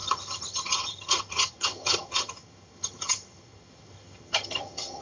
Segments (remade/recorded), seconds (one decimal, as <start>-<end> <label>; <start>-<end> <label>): 0.0-5.0 remade

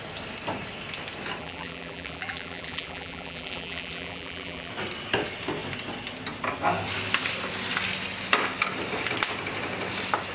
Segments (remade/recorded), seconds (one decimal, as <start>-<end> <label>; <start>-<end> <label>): 0.0-1.4 recorded; 1.4-4.7 remade; 4.7-10.3 recorded

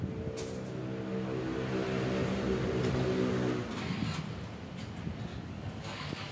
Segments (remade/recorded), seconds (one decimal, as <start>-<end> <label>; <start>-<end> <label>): 0.0-5.3 recorded; 5.3-6.3 remade

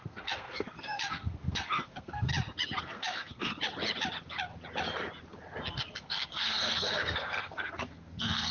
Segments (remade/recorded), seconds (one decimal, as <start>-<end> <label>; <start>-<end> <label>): 0.0-2.3 remade; 2.3-2.8 recorded; 2.8-3.5 remade; 3.5-5.7 recorded; 5.7-8.5 remade

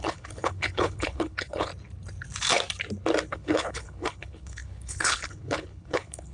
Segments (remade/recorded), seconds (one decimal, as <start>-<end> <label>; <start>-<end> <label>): 0.0-1.7 remade; 1.7-3.3 recorded; 3.3-6.3 remade

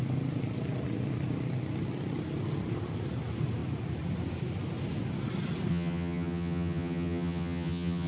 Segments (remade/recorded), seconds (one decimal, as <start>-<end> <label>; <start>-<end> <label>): 0.0-5.7 recorded; 5.7-8.1 remade

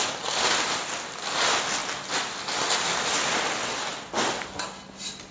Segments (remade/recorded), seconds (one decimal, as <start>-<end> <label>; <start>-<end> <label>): 0.0-5.3 recorded

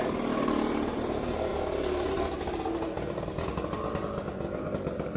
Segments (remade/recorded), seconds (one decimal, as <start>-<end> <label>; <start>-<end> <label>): 0.0-5.2 recorded